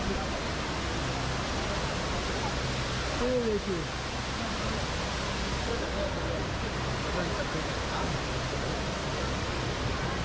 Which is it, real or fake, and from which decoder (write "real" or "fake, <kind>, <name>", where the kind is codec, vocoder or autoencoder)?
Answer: real